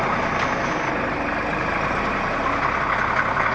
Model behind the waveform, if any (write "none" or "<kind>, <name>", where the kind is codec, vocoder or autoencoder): none